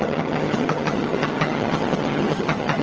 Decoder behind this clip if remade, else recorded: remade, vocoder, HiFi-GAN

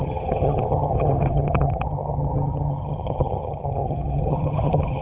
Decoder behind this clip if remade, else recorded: remade, vocoder, HiFi-GAN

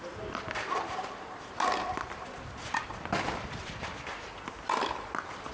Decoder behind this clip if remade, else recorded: recorded